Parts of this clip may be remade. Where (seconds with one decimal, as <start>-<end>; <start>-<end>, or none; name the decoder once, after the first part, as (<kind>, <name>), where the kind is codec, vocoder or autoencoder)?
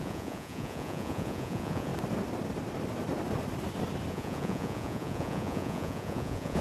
0.0-1.9 (vocoder, Vocos); 4.1-6.6